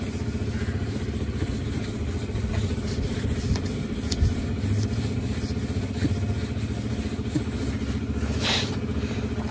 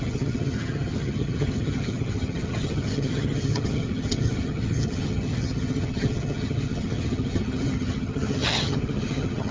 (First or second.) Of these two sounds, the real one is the first